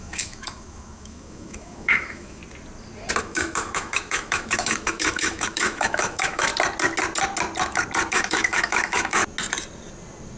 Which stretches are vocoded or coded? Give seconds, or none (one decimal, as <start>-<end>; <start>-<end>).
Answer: 0.0-2.4; 3.2-6.5; 8.1-9.2

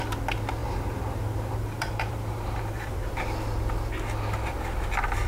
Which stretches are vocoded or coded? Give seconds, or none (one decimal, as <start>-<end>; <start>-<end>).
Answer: 0.6-3.1

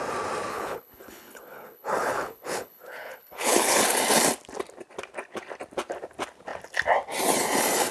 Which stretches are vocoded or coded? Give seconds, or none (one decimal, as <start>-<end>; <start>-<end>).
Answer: 0.5-3.8